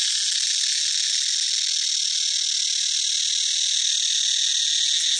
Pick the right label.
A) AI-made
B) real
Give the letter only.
B